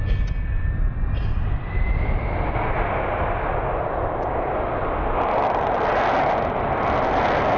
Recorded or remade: recorded